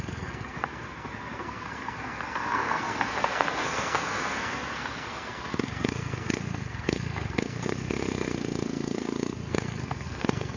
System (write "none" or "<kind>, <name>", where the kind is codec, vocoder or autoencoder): codec, SNAC